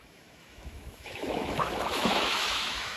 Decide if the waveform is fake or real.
fake